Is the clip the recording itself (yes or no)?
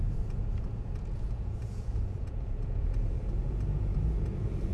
no